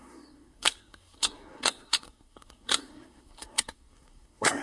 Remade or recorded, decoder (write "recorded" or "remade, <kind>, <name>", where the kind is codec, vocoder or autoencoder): remade, codec, SNAC